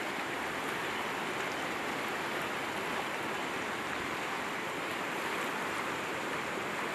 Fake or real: real